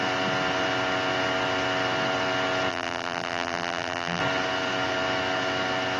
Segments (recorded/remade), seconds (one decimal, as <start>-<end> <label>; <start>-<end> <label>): 0.0-2.7 recorded; 2.7-4.2 remade; 4.2-6.0 recorded